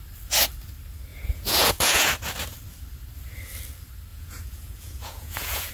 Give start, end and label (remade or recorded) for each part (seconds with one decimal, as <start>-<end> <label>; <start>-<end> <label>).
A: 0.0-1.1 recorded; 1.1-2.1 remade; 2.1-4.1 recorded; 4.1-5.7 remade